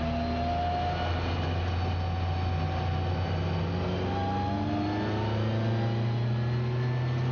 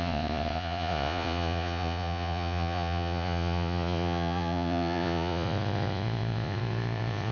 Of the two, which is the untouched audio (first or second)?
first